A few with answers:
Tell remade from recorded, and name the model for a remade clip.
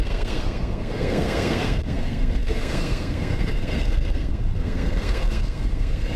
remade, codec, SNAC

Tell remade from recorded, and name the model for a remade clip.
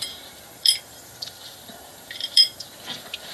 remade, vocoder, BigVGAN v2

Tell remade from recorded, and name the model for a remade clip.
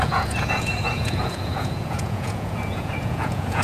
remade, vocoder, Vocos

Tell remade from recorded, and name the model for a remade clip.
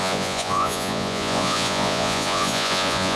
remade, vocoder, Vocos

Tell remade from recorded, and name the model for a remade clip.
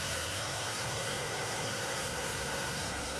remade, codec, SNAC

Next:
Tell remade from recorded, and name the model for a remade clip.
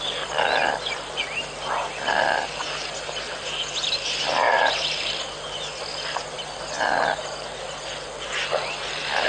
recorded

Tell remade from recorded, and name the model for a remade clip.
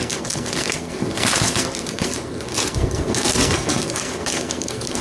remade, codec, SNAC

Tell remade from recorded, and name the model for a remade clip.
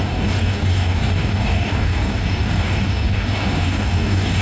remade, codec, DAC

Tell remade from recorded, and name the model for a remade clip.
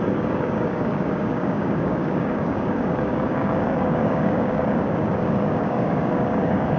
remade, codec, DAC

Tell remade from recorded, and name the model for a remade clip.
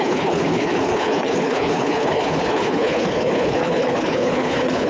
remade, codec, HILCodec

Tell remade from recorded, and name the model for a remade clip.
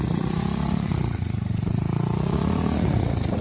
remade, vocoder, Vocos